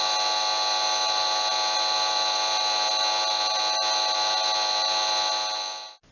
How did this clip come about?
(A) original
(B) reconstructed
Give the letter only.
A